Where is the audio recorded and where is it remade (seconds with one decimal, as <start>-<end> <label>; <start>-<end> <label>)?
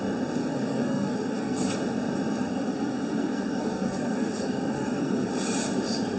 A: 0.0-0.4 recorded; 0.4-1.7 remade; 1.7-2.4 recorded; 2.4-5.3 remade; 5.3-6.2 recorded